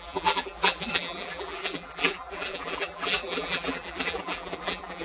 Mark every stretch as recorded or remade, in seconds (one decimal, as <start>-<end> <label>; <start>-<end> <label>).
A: 0.0-5.0 remade